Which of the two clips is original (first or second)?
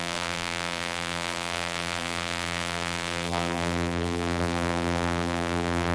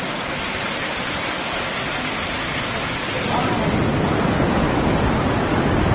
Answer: second